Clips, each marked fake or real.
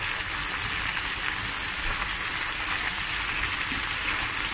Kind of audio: real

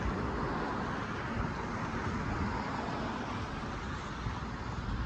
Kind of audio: real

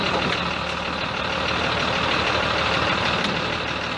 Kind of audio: real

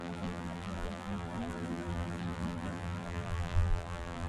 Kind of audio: fake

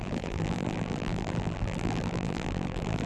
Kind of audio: fake